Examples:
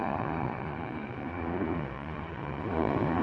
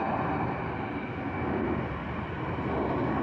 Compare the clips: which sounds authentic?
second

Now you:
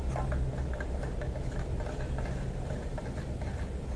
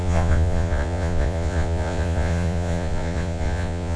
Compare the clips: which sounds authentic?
first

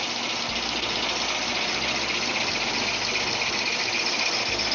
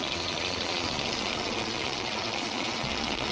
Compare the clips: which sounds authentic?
first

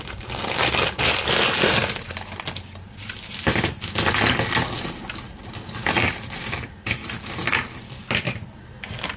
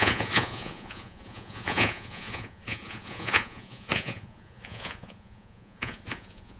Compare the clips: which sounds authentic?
first